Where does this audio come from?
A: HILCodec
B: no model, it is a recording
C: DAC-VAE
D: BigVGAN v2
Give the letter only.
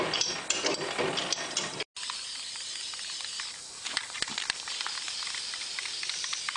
B